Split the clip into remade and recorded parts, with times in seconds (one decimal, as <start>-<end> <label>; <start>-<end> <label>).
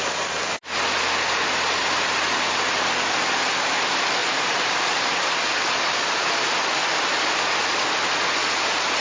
0.0-1.8 recorded; 1.8-3.2 remade; 3.2-4.2 recorded; 4.2-6.4 remade; 6.4-9.0 recorded